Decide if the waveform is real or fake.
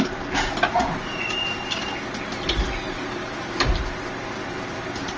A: real